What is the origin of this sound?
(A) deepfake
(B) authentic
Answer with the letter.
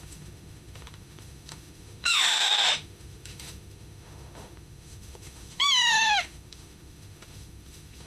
A